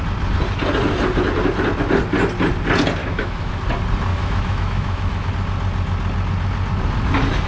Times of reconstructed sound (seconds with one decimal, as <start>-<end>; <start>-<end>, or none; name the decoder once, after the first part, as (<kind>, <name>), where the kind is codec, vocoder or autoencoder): 3.0-3.6 (autoencoder, DAC-VAE); 4.1-5.3